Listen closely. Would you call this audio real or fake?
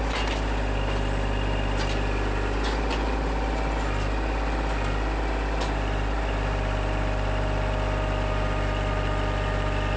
real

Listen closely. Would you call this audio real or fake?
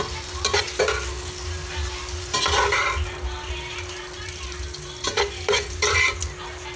real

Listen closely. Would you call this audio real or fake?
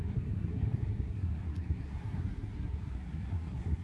fake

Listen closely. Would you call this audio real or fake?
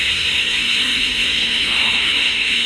fake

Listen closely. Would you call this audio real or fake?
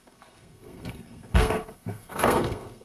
fake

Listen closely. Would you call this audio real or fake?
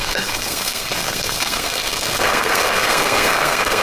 fake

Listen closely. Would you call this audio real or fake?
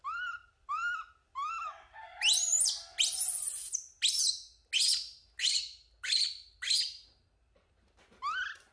real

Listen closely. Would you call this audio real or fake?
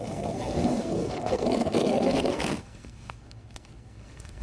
fake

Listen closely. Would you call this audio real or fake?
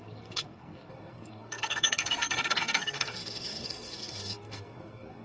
fake